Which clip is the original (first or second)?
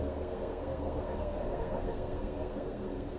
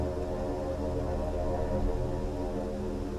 second